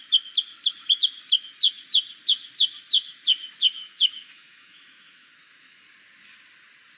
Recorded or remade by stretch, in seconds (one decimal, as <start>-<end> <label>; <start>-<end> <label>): 0.0-3.8 recorded; 3.8-5.8 remade; 5.8-7.0 recorded